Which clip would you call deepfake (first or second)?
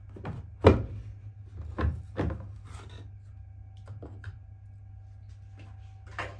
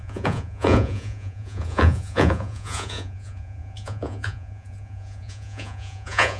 second